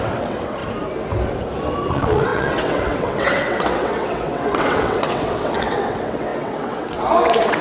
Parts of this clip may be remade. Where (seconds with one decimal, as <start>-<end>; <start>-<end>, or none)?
0.0-0.6; 1.9-7.6